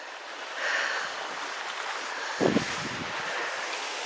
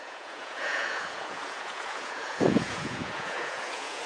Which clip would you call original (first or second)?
first